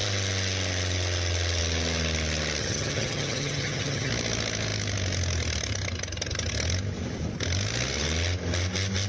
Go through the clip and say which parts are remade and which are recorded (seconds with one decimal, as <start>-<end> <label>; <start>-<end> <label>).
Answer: 0.0-2.6 recorded; 2.6-4.1 remade; 4.1-9.1 recorded